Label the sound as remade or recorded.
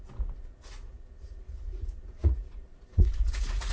remade